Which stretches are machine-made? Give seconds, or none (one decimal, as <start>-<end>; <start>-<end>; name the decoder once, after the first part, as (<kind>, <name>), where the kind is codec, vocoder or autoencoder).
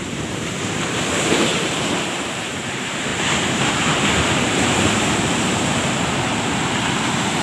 0.0-3.1 (vocoder, BigVGAN v2); 3.7-7.4